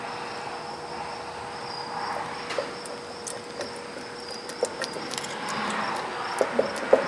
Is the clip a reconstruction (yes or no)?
no